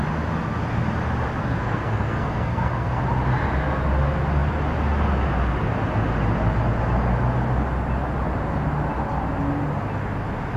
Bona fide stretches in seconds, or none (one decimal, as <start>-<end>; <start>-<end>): 0.0-1.4; 3.0-10.6